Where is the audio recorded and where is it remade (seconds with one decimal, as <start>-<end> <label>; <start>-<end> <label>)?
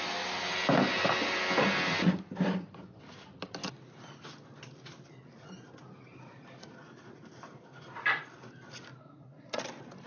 0.0-9.0 recorded; 9.0-9.6 remade; 9.6-10.1 recorded